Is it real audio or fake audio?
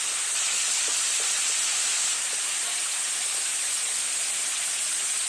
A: real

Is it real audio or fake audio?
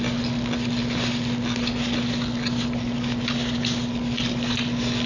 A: real